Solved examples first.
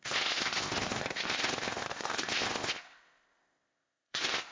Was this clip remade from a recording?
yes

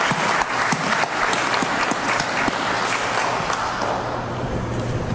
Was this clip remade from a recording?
no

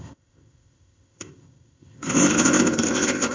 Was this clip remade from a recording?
yes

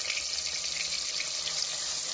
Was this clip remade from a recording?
no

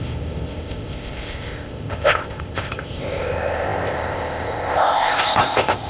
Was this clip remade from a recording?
yes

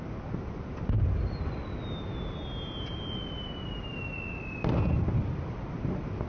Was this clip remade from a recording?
no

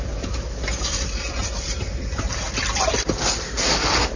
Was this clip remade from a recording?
no